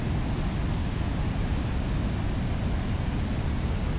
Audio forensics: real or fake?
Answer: real